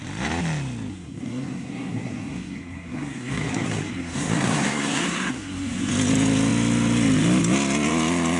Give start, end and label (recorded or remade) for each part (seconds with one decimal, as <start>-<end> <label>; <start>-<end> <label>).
0.0-0.9 recorded; 0.9-5.9 remade; 5.9-8.4 recorded